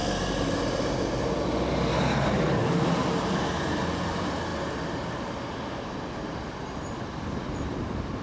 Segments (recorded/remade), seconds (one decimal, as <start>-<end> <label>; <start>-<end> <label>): 0.0-1.9 recorded; 1.9-2.6 remade; 2.6-4.0 recorded; 4.0-4.5 remade; 4.5-5.2 recorded; 5.2-8.2 remade